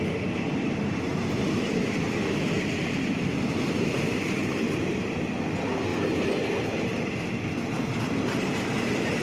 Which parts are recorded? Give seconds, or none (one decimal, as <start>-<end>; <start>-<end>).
0.0-1.1; 5.3-5.9; 6.4-9.2